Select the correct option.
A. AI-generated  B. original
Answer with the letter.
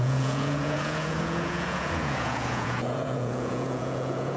A